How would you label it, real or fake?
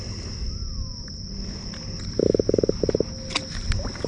real